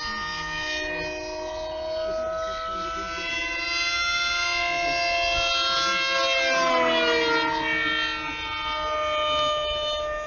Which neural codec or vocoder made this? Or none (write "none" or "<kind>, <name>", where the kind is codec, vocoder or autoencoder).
none